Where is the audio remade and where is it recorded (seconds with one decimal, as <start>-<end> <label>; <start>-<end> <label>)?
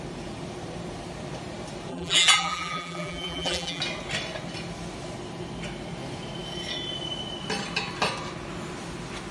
0.0-1.9 recorded; 1.9-3.8 remade; 3.8-9.3 recorded